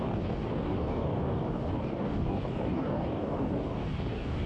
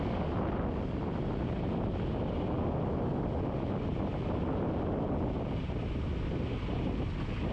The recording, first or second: second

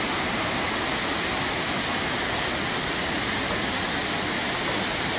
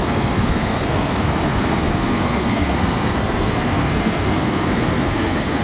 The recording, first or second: first